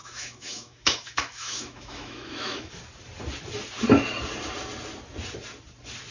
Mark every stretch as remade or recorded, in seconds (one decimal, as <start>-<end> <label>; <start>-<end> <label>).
0.0-2.7 remade; 2.7-6.1 recorded